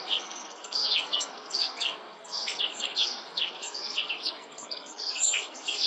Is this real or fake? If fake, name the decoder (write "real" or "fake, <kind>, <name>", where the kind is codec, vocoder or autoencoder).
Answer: fake, codec, SNAC